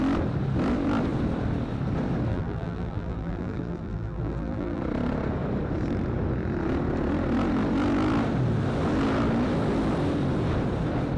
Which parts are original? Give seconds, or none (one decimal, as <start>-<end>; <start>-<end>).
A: 0.0-2.3; 4.8-11.2